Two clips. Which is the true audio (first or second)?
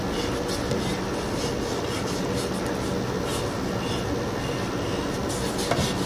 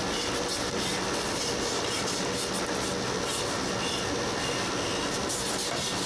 first